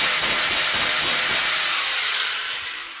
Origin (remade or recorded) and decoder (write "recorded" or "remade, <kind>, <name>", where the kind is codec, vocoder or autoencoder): recorded